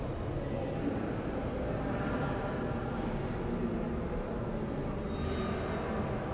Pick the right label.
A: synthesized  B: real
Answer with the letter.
B